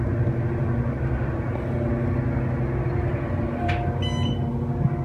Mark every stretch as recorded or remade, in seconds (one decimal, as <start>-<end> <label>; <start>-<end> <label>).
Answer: 0.0-3.1 recorded; 3.1-3.7 remade; 3.7-5.0 recorded